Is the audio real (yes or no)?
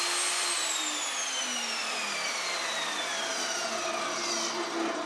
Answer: yes